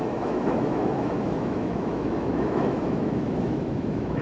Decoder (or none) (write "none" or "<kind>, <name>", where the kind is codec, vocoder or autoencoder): autoencoder, DAC-VAE